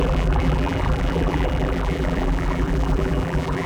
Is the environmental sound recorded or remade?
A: remade